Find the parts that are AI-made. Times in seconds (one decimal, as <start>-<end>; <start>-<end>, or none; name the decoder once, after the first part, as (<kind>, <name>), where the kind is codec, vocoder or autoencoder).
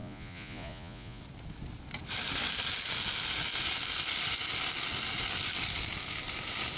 0.0-1.2 (vocoder, Vocos)